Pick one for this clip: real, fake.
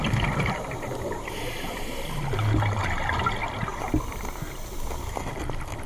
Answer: real